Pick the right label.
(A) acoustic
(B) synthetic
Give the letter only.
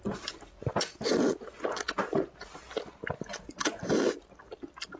A